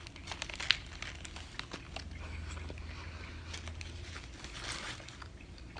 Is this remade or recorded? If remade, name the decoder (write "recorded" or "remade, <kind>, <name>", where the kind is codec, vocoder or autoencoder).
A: recorded